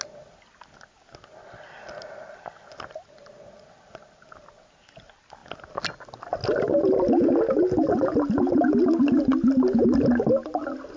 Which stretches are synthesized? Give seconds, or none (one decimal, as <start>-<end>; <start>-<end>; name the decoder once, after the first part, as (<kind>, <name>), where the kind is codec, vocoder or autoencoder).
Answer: none